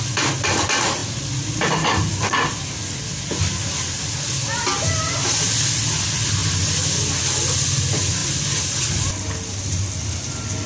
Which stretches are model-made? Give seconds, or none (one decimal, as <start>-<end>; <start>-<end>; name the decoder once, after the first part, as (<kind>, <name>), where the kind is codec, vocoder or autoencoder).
none